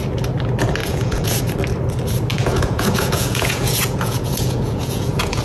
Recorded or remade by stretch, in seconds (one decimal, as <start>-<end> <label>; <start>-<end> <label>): 0.0-0.8 recorded; 0.8-1.4 remade; 1.4-2.3 recorded; 2.3-5.4 remade